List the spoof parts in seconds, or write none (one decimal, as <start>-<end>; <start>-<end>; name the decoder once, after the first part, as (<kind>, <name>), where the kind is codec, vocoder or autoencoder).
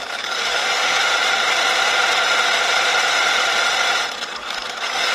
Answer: 0.0-1.0 (codec, DAC); 4.1-5.1